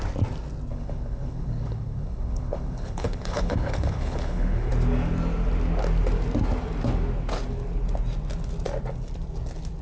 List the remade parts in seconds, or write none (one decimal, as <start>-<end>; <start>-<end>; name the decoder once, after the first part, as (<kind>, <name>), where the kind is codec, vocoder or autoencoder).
0.7-4.7 (codec, HILCodec)